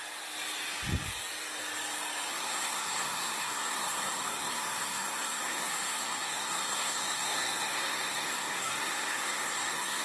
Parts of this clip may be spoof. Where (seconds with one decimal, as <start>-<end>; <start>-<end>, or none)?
2.3-10.0